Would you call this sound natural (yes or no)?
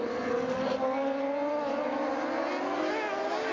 yes